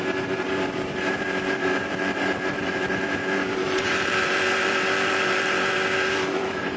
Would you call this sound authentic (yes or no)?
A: no